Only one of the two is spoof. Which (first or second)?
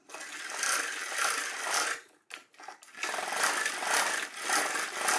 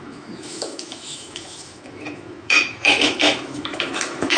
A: second